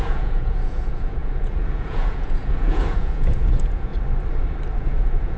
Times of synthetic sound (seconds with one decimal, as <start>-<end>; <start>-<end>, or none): 0.0-3.9; 4.8-5.4